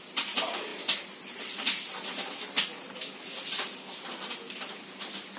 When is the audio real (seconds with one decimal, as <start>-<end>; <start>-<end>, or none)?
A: 0.0-5.4